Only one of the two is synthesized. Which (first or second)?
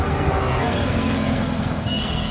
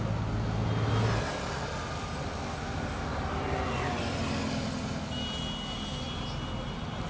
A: first